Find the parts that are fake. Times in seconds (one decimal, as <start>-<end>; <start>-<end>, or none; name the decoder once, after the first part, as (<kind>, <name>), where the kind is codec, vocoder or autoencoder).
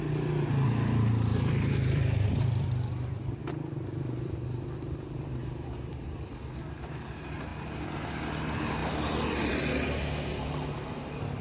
1.3-6.3 (vocoder, BigVGAN v2)